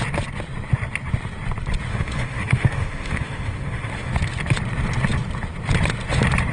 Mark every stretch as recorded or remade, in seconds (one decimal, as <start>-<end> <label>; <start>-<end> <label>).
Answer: 0.0-1.9 recorded; 1.9-4.1 remade; 4.1-6.5 recorded